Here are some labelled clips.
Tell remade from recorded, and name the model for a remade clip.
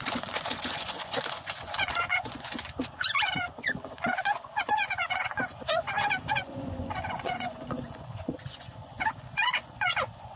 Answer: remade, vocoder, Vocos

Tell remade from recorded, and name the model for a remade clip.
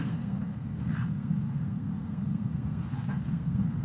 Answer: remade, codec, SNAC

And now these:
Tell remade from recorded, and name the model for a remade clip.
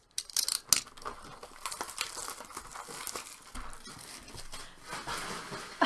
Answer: recorded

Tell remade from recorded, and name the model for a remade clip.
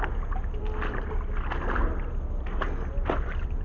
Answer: recorded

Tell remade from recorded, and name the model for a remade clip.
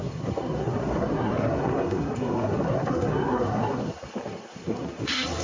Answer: remade, codec, SNAC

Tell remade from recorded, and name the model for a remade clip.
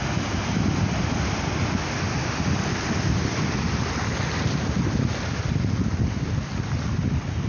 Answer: recorded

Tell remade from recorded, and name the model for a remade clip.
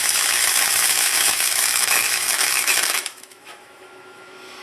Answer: remade, autoencoder, DAC-VAE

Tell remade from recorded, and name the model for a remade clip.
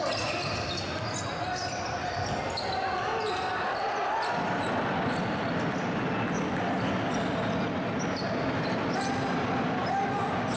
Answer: recorded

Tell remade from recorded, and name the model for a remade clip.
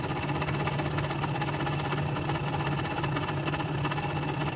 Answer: recorded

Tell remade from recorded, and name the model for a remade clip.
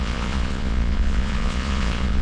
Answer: remade, vocoder, Vocos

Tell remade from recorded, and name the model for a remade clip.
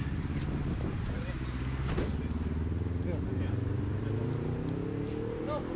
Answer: recorded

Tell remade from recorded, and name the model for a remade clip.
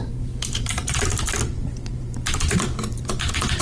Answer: remade, vocoder, BigVGAN v2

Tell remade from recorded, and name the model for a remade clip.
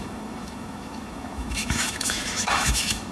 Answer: remade, autoencoder, DAC-VAE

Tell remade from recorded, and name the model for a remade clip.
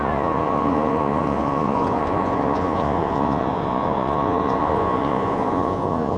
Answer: remade, vocoder, Vocos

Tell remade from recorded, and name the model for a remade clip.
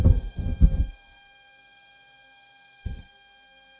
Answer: remade, codec, SNAC